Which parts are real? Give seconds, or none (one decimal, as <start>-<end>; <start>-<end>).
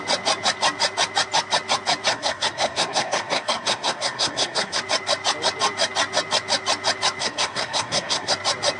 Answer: 0.0-2.1; 4.8-7.2; 8.3-8.8